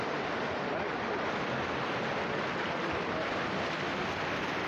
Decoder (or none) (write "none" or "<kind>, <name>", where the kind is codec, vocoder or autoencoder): none